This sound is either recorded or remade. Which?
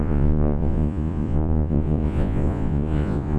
remade